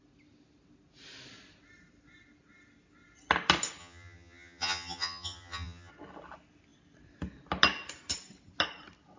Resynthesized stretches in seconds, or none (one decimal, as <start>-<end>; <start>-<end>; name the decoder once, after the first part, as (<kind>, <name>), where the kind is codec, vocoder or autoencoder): 3.8-5.9 (vocoder, HiFi-GAN)